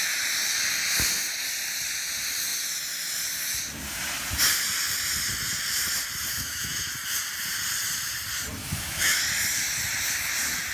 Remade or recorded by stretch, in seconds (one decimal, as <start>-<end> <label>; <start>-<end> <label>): 0.0-6.3 recorded; 6.3-6.9 remade; 6.9-8.6 recorded; 8.6-9.2 remade; 9.2-10.7 recorded